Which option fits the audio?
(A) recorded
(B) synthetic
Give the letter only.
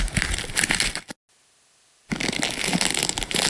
A